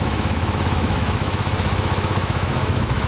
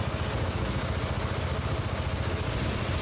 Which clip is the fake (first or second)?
first